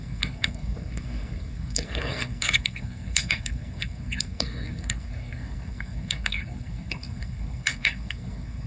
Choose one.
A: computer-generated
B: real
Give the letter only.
A